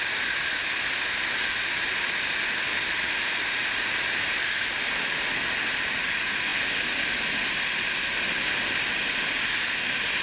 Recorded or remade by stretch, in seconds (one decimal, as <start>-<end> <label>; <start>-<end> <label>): 0.0-10.2 recorded

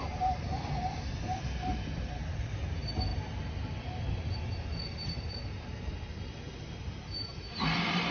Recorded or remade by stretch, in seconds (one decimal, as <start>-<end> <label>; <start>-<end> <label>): 0.0-8.1 recorded